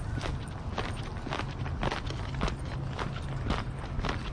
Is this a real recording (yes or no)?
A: yes